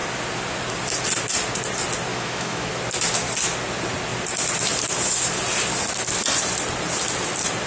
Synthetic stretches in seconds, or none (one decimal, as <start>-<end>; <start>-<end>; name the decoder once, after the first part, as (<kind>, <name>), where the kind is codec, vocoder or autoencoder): 2.1-2.7 (autoencoder, DAC-VAE)